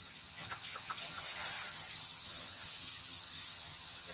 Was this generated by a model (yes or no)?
yes